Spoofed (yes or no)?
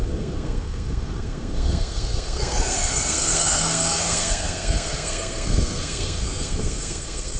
yes